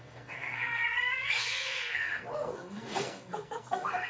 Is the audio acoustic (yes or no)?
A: no